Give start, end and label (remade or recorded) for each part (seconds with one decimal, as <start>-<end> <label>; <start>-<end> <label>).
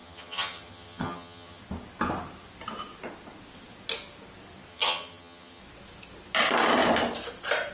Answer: 0.0-1.6 remade; 1.6-4.7 recorded; 4.7-5.6 remade; 5.6-7.7 recorded